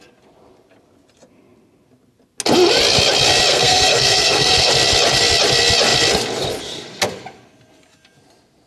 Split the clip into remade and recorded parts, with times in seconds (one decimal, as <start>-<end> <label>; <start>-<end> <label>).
0.0-3.5 recorded; 3.5-4.7 remade; 4.7-8.7 recorded